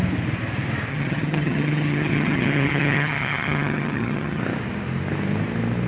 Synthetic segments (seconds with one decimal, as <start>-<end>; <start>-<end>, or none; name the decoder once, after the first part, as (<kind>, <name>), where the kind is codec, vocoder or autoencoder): 0.9-4.4 (vocoder, HiFi-GAN)